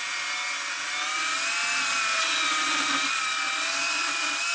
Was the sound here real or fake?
real